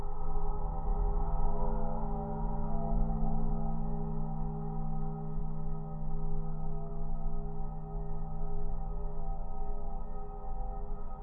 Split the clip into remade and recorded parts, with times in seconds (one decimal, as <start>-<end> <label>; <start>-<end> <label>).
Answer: 0.0-0.9 recorded; 0.9-3.5 remade; 3.5-5.4 recorded; 5.4-6.9 remade; 6.9-9.3 recorded; 9.3-10.0 remade; 10.0-11.2 recorded